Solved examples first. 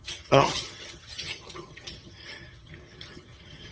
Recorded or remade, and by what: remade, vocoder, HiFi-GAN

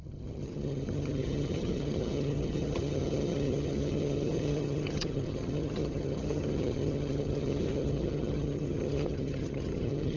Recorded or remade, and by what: remade, vocoder, HiFi-GAN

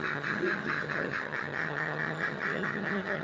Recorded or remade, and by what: remade, vocoder, HiFi-GAN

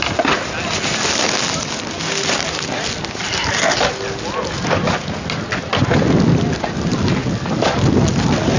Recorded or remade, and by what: recorded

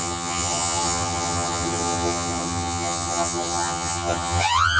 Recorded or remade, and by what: remade, vocoder, HiFi-GAN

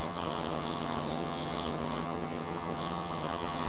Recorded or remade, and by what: remade, vocoder, HiFi-GAN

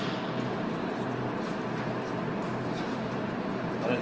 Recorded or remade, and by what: recorded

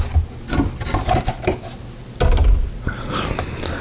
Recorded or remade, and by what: recorded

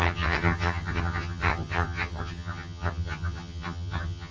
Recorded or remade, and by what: remade, vocoder, HiFi-GAN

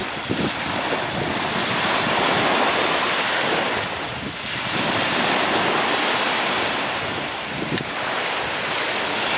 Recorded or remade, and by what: recorded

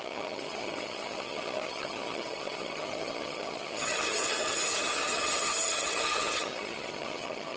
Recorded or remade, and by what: remade, vocoder, HiFi-GAN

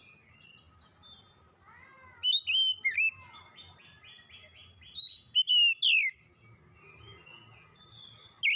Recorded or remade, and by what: recorded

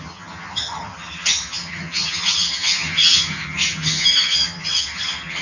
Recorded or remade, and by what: remade, vocoder, HiFi-GAN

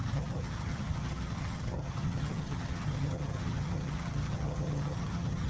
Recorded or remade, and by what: remade, vocoder, HiFi-GAN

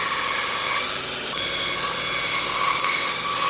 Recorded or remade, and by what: recorded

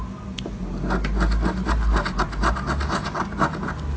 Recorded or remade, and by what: recorded